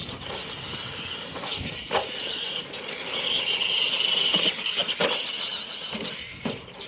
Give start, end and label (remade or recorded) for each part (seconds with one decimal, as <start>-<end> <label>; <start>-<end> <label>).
0.0-6.9 recorded